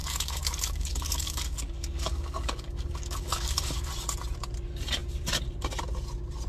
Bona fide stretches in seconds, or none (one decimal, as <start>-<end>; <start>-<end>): 3.9-6.5